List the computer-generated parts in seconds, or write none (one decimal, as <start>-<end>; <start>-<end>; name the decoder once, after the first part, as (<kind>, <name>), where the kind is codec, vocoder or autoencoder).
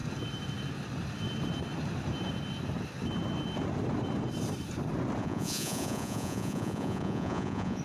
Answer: 5.2-7.8 (vocoder, Vocos)